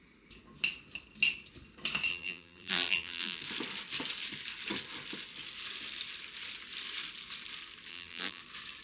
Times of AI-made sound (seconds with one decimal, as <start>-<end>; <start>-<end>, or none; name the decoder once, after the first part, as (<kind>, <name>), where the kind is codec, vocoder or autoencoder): 2.1-3.4 (vocoder, BigVGAN v2); 7.9-8.4